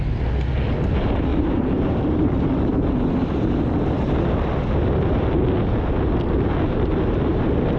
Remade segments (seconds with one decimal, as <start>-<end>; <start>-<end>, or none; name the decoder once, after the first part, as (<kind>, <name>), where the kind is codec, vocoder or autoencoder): 1.3-2.3 (vocoder, BigVGAN v2)